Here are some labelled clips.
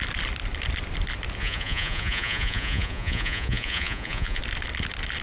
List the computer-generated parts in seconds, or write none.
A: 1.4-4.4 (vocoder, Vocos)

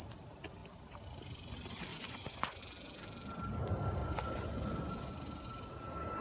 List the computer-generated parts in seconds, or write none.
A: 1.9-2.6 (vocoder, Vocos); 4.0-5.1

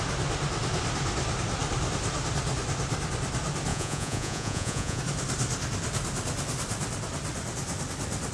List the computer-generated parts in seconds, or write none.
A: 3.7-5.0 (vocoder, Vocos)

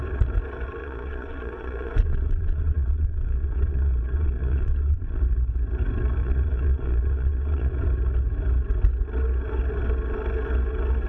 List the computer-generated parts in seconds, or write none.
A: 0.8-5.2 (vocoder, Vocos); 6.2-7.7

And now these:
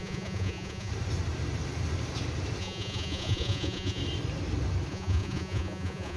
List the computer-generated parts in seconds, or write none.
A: 0.0-0.9 (vocoder, Vocos); 2.6-4.0; 4.9-6.2

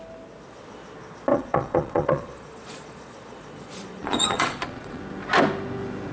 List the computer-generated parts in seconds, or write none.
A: 1.3-5.0 (vocoder, Vocos)

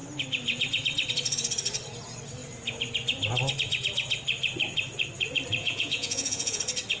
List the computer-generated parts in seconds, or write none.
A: 5.6-6.6 (vocoder, Vocos)

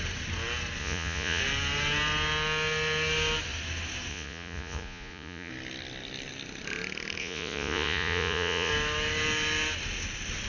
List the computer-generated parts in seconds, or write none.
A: 0.8-1.4 (vocoder, Vocos); 4.1-5.5; 7.2-8.7